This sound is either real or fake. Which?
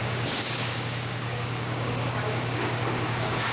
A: fake